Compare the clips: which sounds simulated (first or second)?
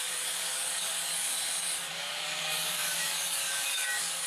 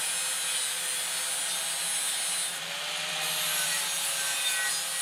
first